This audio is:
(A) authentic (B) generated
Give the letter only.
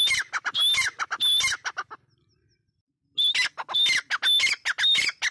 A